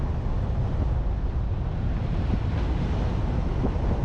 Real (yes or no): yes